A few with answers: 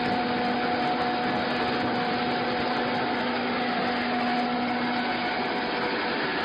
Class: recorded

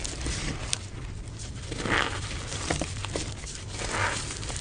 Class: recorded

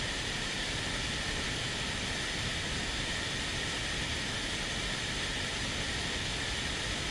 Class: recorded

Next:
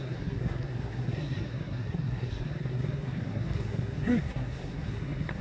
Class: remade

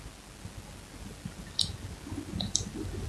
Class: recorded